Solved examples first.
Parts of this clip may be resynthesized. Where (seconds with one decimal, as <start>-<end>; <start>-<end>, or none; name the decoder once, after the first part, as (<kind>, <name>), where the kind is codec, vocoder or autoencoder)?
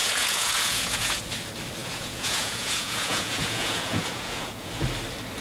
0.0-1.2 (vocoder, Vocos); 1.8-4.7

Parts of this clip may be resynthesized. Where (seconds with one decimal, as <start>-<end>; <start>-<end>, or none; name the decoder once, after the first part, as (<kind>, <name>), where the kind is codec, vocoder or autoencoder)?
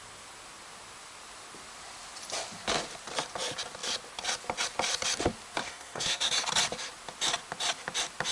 5.6-6.3 (codec, SNAC)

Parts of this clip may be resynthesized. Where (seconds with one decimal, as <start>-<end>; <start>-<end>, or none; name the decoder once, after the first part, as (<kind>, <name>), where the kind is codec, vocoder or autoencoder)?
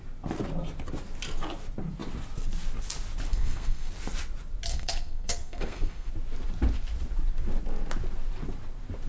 3.3-3.9 (codec, SNAC); 4.7-6.1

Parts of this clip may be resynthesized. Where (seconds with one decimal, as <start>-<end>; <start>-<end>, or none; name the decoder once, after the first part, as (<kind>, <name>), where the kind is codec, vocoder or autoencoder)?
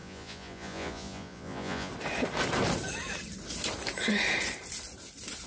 0.0-1.9 (vocoder, Vocos)